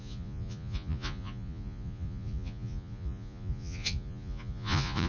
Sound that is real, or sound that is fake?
fake